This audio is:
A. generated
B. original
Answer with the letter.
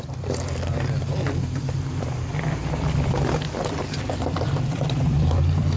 A